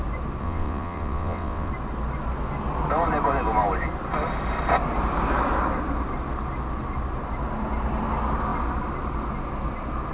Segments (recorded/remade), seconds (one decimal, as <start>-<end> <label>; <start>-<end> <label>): 0.0-0.4 recorded; 0.4-1.7 remade; 1.7-10.1 recorded

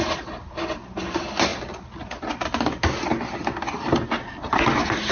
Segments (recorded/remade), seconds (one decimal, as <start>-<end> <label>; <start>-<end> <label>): 0.0-5.1 recorded

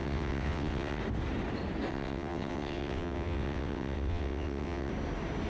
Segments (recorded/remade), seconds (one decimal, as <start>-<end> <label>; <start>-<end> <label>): 0.0-1.0 remade; 1.0-1.9 recorded; 1.9-4.9 remade; 4.9-5.5 recorded

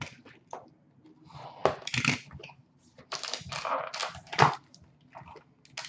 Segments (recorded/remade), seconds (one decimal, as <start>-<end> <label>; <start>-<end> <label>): 0.0-5.9 recorded